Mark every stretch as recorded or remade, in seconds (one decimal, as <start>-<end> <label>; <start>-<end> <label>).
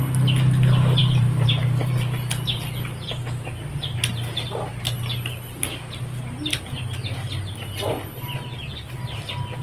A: 0.0-1.0 recorded; 1.0-1.9 remade; 1.9-9.6 recorded